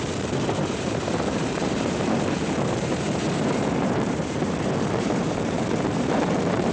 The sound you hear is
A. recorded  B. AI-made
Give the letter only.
B